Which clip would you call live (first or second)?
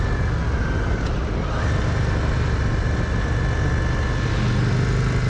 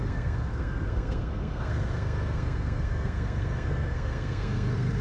first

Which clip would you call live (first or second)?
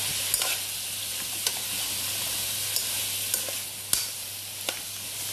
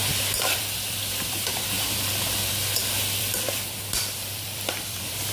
first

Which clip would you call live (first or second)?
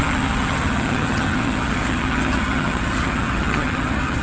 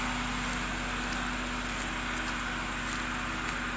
second